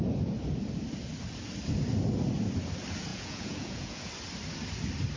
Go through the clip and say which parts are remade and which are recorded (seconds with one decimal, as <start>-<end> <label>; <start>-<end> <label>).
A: 0.0-3.1 recorded; 3.1-4.1 remade; 4.1-5.2 recorded